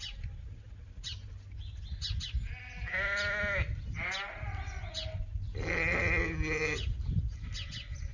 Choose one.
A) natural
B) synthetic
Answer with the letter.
A